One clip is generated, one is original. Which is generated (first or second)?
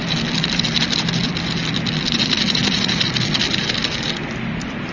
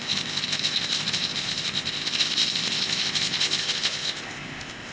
second